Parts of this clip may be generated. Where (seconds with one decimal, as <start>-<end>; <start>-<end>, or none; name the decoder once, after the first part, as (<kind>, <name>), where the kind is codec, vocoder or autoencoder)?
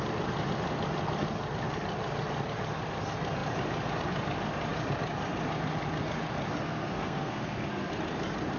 6.6-7.9 (codec, SNAC)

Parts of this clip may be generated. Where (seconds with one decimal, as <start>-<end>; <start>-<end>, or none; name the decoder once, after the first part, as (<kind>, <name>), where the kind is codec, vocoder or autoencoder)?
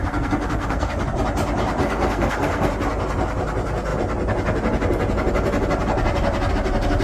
0.0-1.0 (codec, SNAC); 1.8-2.7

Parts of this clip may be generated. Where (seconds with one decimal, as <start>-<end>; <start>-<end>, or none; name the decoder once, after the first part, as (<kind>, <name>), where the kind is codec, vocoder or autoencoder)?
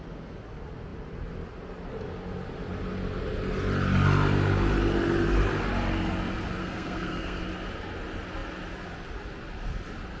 6.6-7.4 (codec, SNAC)